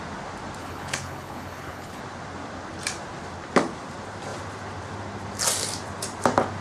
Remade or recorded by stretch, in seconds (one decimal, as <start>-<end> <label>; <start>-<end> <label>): 0.0-0.6 recorded; 0.6-2.0 remade; 2.0-6.6 recorded